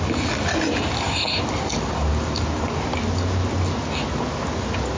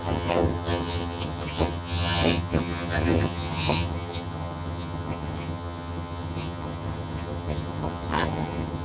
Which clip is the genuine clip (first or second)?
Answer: first